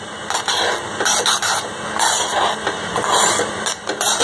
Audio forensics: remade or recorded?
recorded